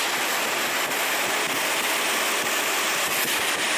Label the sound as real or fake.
real